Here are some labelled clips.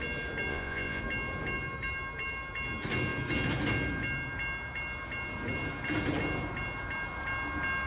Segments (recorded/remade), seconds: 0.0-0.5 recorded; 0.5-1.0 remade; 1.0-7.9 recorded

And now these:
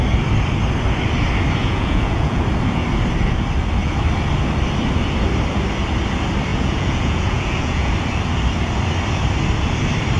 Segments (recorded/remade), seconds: 0.0-1.6 recorded; 1.6-2.4 remade; 2.4-6.5 recorded; 6.5-7.9 remade; 7.9-10.2 recorded

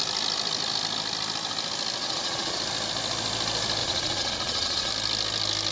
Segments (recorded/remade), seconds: 0.0-2.0 recorded; 2.0-2.6 remade; 2.6-3.8 recorded; 3.8-4.9 remade; 4.9-5.7 recorded

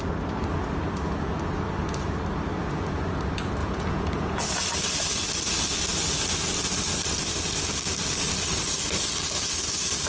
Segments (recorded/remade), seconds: 0.0-2.6 recorded; 2.6-3.2 remade; 3.2-3.6 recorded; 3.6-4.4 remade; 4.4-10.1 recorded

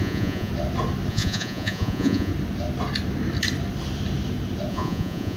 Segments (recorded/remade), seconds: 0.0-0.5 remade; 0.5-1.1 recorded; 1.1-2.3 remade; 2.3-4.7 recorded; 4.7-5.4 remade

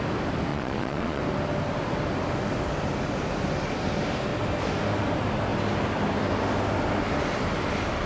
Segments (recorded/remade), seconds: 0.0-0.5 recorded; 0.5-1.2 remade; 1.2-8.1 recorded

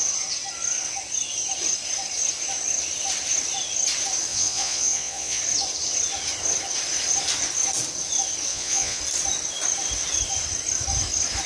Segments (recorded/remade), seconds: 0.0-4.3 recorded; 4.3-5.4 remade; 5.4-8.5 recorded; 8.5-9.0 remade; 9.0-11.5 recorded